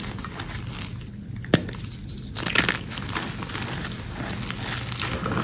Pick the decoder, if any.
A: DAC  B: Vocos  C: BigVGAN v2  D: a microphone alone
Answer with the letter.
D